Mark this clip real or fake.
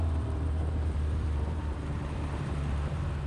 fake